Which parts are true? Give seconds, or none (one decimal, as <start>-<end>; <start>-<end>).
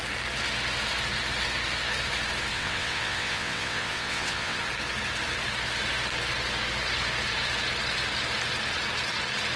0.0-2.5; 4.6-9.6